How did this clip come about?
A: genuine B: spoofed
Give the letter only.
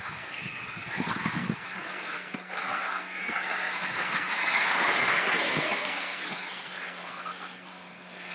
B